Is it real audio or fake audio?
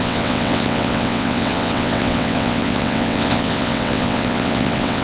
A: fake